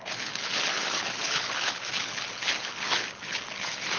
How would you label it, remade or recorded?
remade